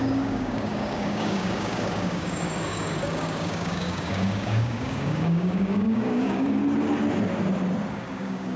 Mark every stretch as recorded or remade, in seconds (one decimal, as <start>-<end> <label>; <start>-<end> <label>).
0.0-6.6 remade; 6.6-7.9 recorded; 7.9-8.6 remade

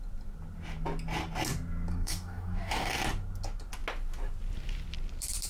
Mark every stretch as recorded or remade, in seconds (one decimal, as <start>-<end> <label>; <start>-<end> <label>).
0.0-1.9 recorded; 1.9-3.0 remade; 3.0-5.5 recorded

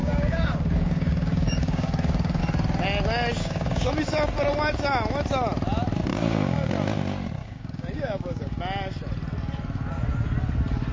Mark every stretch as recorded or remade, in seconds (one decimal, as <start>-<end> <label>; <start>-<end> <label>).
0.0-2.4 remade; 2.4-3.4 recorded; 3.4-3.9 remade; 3.9-6.1 recorded; 6.1-6.7 remade; 6.7-7.4 recorded; 7.4-8.6 remade; 8.6-10.9 recorded